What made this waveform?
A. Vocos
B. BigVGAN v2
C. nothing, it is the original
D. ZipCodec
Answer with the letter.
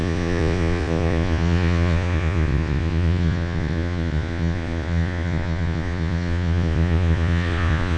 A